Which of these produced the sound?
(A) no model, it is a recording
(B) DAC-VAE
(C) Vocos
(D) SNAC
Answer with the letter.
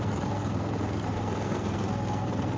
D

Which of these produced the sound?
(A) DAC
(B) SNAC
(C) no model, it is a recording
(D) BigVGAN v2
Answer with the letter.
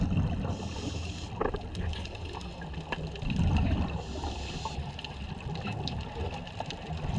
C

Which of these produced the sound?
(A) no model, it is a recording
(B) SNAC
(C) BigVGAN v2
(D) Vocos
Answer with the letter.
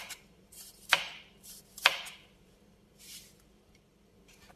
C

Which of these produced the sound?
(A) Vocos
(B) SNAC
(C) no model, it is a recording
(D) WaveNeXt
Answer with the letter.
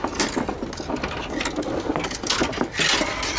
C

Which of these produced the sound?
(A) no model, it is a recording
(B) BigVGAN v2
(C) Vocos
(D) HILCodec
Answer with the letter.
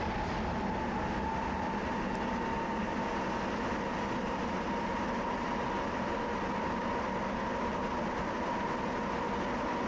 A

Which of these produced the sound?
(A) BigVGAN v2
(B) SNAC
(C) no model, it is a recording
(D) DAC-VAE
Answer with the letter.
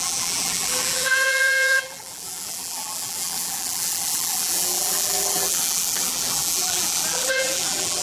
A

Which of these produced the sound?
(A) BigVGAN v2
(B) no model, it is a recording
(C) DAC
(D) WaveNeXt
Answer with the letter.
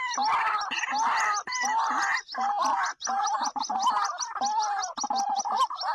B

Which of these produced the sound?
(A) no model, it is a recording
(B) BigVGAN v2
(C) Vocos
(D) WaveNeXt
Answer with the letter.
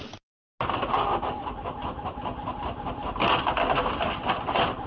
A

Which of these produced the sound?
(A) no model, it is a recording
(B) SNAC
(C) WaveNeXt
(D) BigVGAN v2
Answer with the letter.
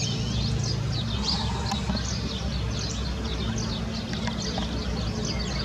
A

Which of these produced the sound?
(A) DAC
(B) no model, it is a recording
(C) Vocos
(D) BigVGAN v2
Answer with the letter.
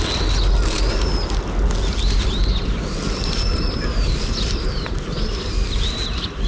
B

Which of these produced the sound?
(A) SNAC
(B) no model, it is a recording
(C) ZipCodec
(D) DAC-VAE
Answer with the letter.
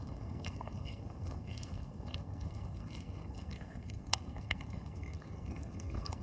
A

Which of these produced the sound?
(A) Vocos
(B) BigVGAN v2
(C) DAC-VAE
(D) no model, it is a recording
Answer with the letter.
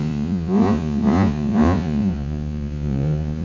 A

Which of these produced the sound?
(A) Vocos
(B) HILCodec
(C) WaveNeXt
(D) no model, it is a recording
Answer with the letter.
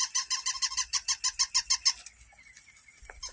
D